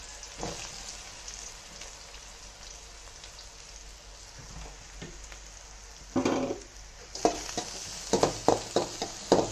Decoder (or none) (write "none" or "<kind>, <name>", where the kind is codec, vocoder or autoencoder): none